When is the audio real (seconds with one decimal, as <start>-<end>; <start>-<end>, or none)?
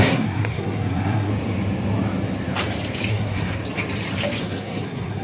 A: 1.3-3.1; 3.6-4.4